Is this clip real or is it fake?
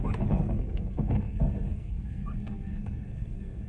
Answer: fake